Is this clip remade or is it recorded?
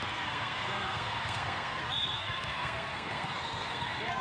remade